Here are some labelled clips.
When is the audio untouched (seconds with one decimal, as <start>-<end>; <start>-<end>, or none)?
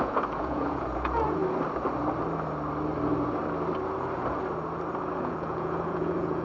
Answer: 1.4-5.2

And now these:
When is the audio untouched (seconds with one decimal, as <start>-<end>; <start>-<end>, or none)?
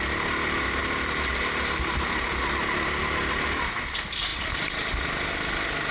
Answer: 0.0-5.9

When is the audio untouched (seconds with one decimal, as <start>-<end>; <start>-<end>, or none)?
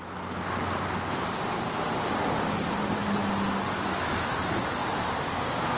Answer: 0.0-5.8